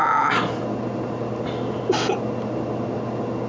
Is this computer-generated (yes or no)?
no